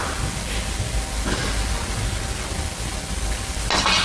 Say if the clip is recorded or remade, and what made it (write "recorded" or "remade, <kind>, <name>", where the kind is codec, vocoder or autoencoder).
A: recorded